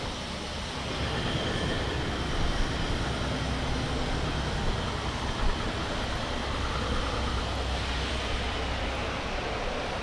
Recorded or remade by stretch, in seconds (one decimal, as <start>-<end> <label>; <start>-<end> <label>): 0.0-10.0 recorded